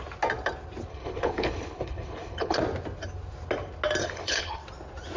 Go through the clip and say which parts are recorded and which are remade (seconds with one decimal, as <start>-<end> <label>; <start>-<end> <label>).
0.0-0.9 recorded; 0.9-2.6 remade; 2.6-4.0 recorded; 4.0-4.6 remade; 4.6-5.2 recorded